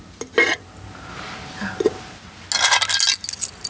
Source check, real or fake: real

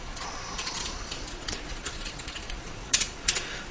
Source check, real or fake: fake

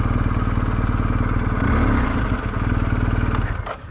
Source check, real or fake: real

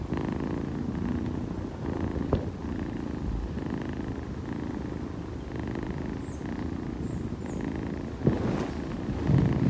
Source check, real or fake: real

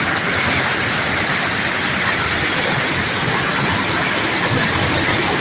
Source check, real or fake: real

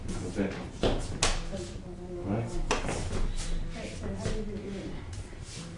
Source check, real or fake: real